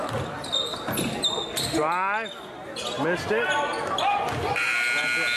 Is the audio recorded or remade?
recorded